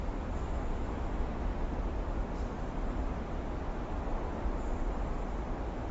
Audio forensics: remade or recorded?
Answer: recorded